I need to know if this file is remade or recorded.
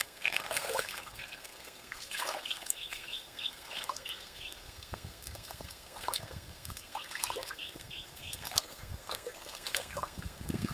remade